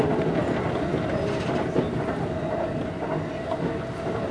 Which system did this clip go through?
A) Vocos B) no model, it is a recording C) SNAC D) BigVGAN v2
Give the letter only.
B